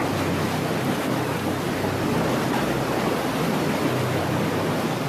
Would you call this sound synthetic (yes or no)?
no